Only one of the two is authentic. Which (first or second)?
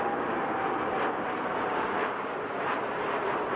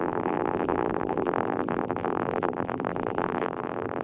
first